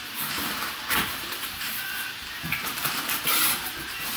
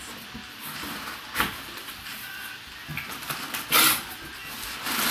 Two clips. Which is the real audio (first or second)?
second